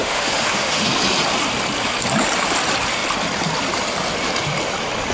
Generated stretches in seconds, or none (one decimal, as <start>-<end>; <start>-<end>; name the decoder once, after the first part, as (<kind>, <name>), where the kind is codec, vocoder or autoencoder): 0.0-0.9 (autoencoder, DAC-VAE)